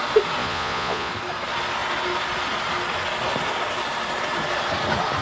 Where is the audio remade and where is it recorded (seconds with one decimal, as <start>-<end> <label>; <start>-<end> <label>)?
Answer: 0.0-0.4 recorded; 0.4-1.1 remade; 1.1-5.2 recorded